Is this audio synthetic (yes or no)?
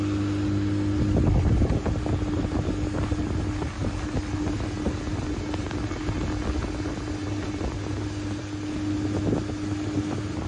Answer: no